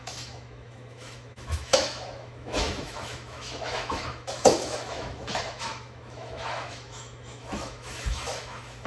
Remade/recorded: remade